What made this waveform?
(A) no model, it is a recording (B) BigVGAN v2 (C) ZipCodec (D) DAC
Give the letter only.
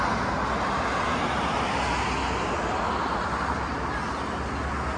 A